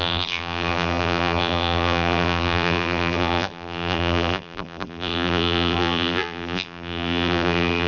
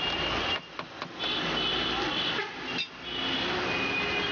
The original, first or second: second